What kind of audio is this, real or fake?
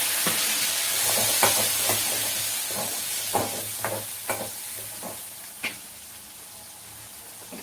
real